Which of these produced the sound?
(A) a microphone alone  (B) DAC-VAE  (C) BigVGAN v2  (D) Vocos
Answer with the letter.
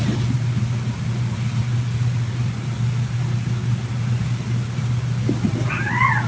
A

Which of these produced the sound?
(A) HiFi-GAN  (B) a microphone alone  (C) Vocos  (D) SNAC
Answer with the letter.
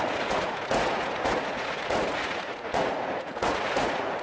C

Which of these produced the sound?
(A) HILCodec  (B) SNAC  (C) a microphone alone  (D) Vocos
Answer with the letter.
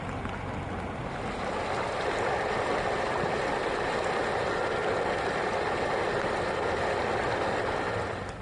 C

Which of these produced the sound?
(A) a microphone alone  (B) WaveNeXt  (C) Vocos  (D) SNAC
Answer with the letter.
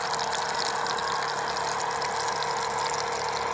A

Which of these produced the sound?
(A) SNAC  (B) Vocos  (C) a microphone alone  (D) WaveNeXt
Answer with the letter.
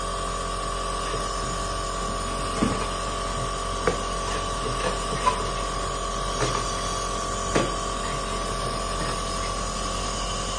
C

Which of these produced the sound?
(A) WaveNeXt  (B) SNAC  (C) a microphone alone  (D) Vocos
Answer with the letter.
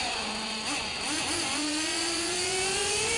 D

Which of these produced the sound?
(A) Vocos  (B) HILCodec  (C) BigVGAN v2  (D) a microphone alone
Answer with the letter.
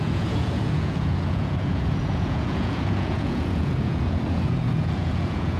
A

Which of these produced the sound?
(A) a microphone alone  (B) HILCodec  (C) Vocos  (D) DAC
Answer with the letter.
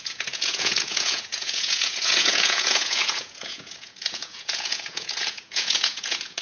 C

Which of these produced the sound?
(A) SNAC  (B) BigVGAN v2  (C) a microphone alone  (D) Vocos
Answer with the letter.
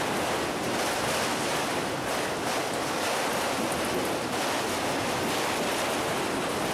C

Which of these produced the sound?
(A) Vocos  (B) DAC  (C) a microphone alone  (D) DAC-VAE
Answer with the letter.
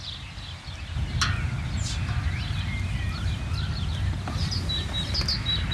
C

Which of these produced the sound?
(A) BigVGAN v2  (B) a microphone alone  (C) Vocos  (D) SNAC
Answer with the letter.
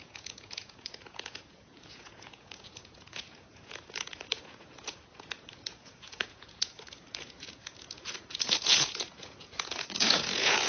C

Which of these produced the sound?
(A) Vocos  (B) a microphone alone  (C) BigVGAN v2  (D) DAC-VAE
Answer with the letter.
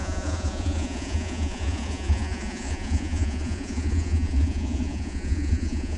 A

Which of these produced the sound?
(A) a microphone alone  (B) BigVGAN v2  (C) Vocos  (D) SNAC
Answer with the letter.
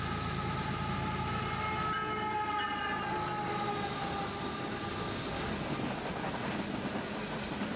A